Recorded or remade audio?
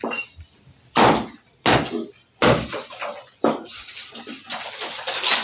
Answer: recorded